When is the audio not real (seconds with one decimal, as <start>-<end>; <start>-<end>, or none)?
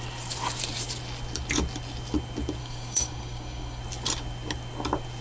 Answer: 2.6-3.8